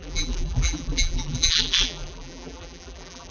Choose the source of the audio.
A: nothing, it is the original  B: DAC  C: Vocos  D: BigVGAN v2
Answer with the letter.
D